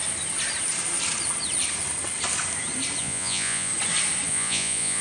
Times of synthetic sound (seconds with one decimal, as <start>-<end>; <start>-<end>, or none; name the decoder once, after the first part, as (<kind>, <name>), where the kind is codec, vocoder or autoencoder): 3.0-3.7 (vocoder, Vocos); 4.3-5.0